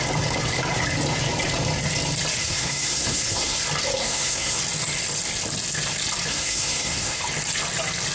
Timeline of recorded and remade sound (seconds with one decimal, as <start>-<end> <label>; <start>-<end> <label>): 0.0-2.4 recorded; 2.4-3.6 remade; 3.6-4.0 recorded; 4.0-4.6 remade; 4.6-6.3 recorded; 6.3-7.2 remade; 7.2-8.1 recorded